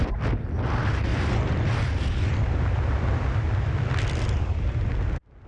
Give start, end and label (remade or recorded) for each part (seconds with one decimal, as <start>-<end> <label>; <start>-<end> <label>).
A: 0.0-1.1 recorded; 1.1-4.4 remade; 4.4-5.5 recorded